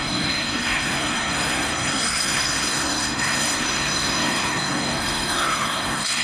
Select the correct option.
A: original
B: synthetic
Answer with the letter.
B